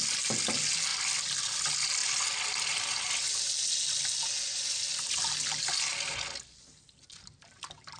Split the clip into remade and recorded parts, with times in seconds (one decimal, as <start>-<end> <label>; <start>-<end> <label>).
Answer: 0.0-8.0 recorded